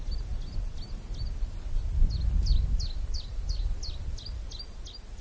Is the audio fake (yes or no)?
no